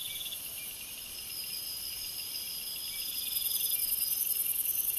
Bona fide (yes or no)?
yes